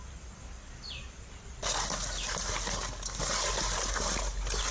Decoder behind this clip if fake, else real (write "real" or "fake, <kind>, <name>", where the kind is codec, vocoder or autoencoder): real